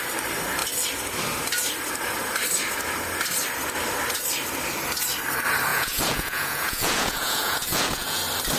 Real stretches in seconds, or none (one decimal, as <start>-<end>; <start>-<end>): 0.0-5.7; 8.2-8.6